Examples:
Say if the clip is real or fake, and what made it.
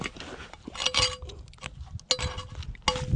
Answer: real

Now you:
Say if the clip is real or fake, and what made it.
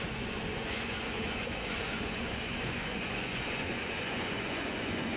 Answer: fake, vocoder, Vocos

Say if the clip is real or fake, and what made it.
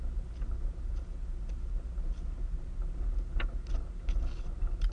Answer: real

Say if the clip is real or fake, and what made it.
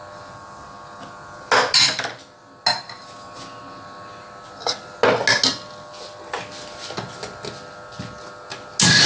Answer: real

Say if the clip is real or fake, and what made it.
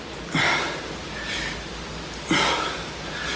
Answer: real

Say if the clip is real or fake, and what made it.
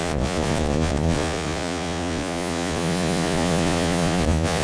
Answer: fake, vocoder, Vocos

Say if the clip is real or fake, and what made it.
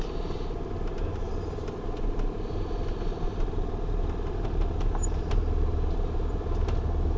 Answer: real